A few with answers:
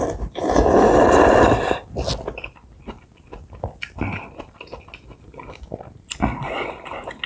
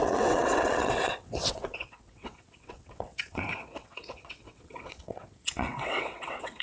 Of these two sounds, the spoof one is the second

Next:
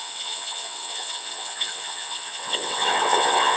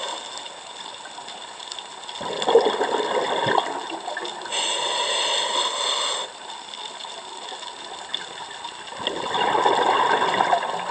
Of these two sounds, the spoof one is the first